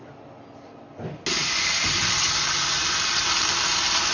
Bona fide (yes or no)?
yes